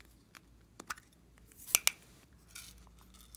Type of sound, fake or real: real